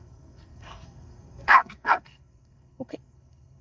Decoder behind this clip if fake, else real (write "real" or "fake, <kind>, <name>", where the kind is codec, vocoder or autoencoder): fake, codec, SNAC